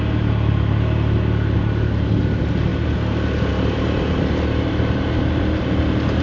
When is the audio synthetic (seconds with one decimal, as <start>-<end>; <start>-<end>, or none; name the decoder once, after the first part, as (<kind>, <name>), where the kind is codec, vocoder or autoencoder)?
0.0-2.7 (vocoder, BigVGAN v2); 3.5-6.2